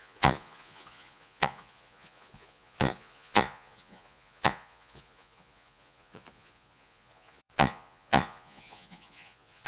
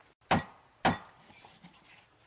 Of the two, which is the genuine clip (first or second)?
second